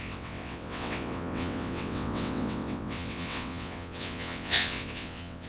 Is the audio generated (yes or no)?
yes